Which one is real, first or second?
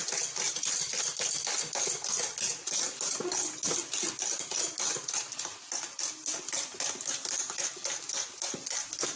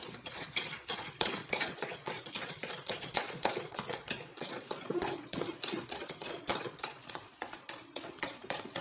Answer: first